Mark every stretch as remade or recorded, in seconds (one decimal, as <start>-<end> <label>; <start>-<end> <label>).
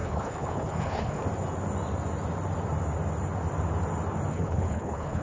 0.0-1.2 remade; 1.2-4.3 recorded; 4.3-5.2 remade